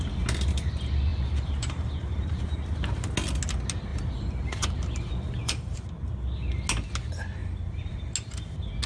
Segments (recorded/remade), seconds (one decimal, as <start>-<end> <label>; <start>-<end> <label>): 0.0-1.1 recorded; 1.1-2.4 remade; 2.4-3.9 recorded; 3.9-5.8 remade; 5.8-8.9 recorded